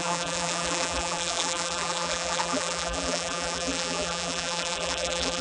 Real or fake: fake